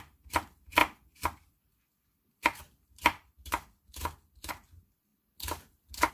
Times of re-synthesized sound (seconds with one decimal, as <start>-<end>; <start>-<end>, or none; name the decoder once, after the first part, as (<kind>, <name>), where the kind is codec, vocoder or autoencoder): none